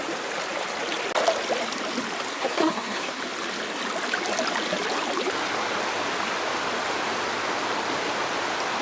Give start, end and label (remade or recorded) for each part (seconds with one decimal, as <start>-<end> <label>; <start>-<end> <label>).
0.0-2.3 recorded; 2.3-3.2 remade; 3.2-8.8 recorded